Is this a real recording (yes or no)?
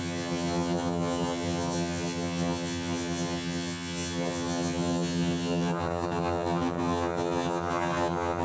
no